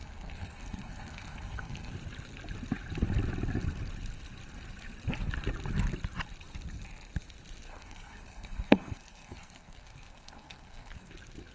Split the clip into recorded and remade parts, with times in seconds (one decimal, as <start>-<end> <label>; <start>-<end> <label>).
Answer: 0.0-1.9 remade; 1.9-7.7 recorded; 7.7-11.1 remade; 11.1-11.5 recorded

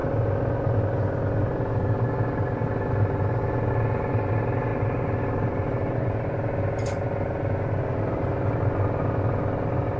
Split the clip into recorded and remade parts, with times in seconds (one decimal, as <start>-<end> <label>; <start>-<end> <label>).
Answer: 0.0-10.0 recorded

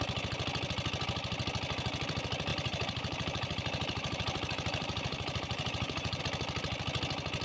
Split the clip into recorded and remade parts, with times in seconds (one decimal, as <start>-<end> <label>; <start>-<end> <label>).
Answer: 0.0-2.5 recorded; 2.5-6.2 remade; 6.2-7.4 recorded

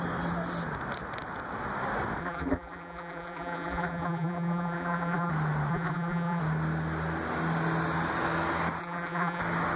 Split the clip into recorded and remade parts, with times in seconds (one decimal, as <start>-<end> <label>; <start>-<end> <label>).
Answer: 0.0-2.2 recorded; 2.2-5.3 remade; 5.3-5.7 recorded; 5.7-6.4 remade; 6.4-8.8 recorded; 8.8-9.4 remade; 9.4-9.8 recorded

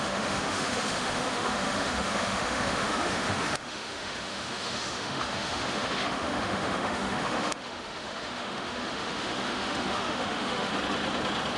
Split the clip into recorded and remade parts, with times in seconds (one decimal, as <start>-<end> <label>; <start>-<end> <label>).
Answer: 0.0-10.7 remade; 10.7-11.6 recorded

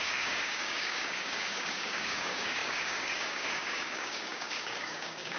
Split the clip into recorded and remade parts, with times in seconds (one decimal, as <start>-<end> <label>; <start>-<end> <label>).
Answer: 0.0-5.4 remade